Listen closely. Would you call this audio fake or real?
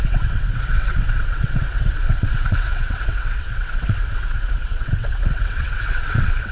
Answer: fake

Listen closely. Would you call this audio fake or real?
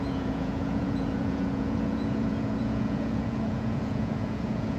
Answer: fake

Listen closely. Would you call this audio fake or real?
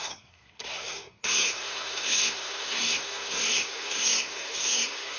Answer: fake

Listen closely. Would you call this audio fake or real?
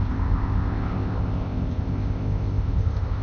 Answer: fake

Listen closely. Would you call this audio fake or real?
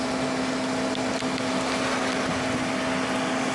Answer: real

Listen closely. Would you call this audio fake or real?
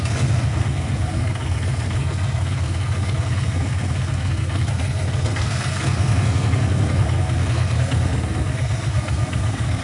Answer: fake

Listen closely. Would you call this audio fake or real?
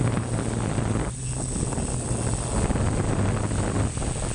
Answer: real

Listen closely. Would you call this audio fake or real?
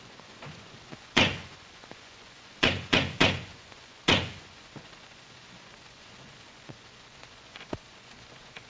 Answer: fake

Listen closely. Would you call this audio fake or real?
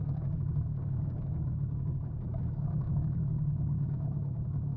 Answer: fake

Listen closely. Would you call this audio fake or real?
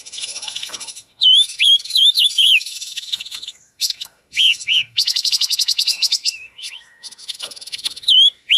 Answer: fake